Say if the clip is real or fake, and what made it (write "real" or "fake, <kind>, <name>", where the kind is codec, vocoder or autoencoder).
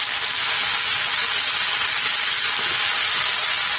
real